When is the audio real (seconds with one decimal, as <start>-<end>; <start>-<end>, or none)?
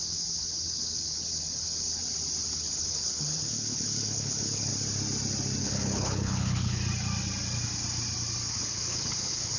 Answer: 2.0-2.5; 4.7-5.6; 6.8-8.5